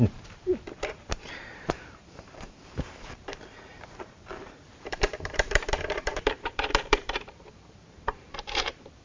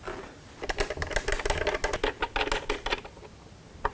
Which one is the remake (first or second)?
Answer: first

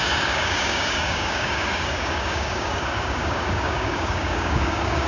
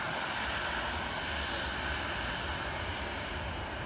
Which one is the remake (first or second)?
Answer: first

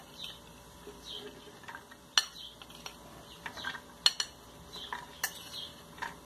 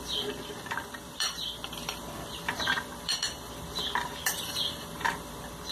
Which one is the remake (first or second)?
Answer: second